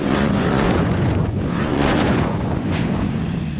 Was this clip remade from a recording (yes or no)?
yes